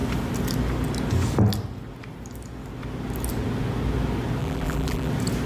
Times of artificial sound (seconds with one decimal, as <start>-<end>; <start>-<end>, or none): 4.4-5.1